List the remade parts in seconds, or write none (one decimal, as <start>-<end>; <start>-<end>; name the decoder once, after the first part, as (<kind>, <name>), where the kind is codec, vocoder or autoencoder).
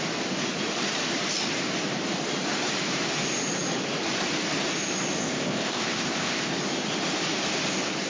5.2-6.5 (codec, ZipCodec)